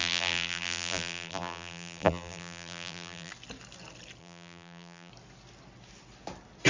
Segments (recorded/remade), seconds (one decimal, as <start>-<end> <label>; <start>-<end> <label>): 0.0-3.3 remade; 3.3-4.2 recorded; 4.2-5.1 remade; 5.1-6.7 recorded